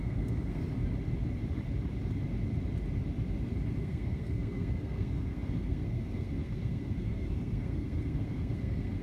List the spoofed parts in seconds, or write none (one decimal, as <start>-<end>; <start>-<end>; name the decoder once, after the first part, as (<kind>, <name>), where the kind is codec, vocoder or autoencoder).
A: 0.0-0.6 (codec, SNAC); 3.8-9.0